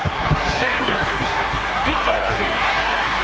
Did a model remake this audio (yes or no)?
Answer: yes